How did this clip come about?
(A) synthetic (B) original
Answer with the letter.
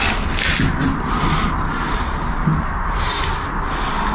B